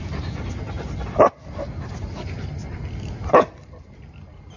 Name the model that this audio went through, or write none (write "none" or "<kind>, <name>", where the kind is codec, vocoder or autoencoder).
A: none